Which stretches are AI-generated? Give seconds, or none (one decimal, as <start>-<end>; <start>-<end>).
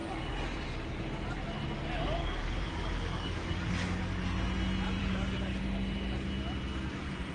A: 0.0-1.0; 2.2-4.0; 5.0-5.6